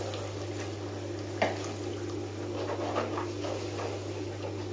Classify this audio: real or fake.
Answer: real